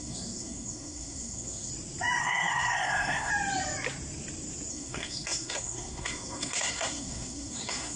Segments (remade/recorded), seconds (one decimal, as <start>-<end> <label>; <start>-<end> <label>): 0.0-1.7 remade; 1.7-2.2 recorded; 2.2-3.3 remade; 3.3-4.7 recorded; 4.7-8.0 remade